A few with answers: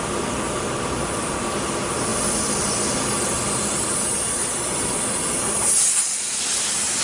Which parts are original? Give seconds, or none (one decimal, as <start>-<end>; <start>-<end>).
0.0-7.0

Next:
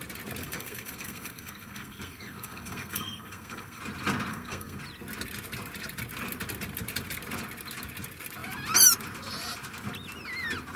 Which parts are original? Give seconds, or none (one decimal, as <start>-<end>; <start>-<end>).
0.0-0.4; 3.8-4.3; 4.8-10.8

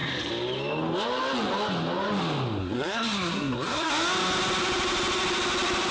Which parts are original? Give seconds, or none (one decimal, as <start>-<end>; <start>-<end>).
0.0-2.6; 3.9-5.9

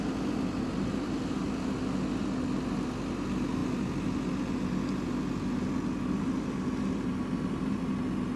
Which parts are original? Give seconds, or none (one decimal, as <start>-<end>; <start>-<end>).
0.0-8.4

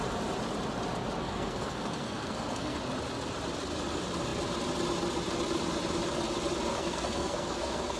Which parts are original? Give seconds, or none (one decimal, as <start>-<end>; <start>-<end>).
0.0-1.2; 2.8-6.7

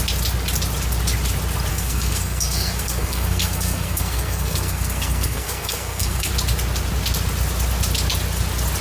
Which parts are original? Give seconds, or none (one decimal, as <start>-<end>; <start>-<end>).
0.0-1.7; 6.3-8.8

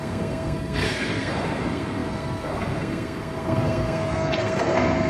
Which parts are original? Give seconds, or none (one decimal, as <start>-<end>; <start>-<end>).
none